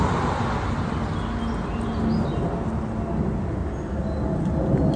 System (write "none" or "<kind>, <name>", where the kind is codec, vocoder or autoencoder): none